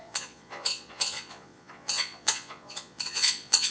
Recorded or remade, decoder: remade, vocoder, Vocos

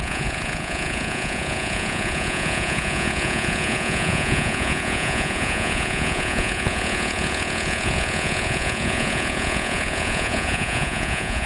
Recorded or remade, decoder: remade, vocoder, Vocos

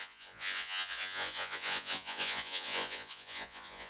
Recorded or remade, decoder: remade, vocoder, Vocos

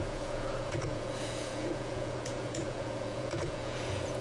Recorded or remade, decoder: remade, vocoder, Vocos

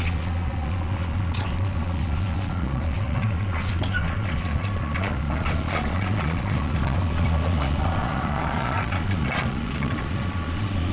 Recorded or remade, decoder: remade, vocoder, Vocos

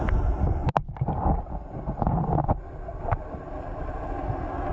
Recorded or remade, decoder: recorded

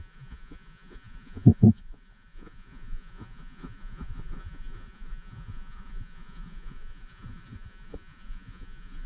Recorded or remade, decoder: remade, vocoder, Vocos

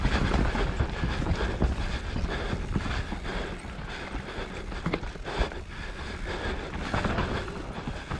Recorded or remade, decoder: recorded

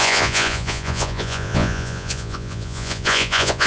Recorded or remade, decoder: remade, vocoder, Vocos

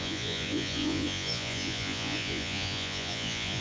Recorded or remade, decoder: remade, vocoder, Vocos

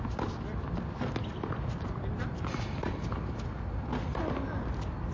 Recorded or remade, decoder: recorded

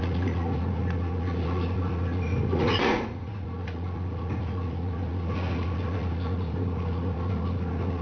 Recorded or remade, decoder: remade, vocoder, Vocos